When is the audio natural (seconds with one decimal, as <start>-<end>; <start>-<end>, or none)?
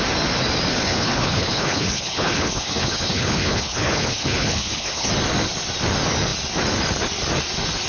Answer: 0.0-0.7; 5.1-7.9